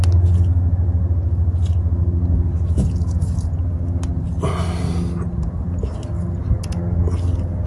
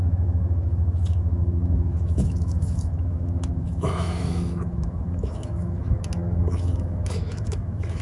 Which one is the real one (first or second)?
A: first